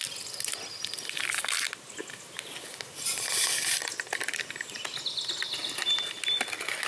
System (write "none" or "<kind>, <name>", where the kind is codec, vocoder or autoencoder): none